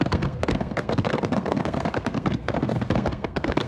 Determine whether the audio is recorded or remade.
remade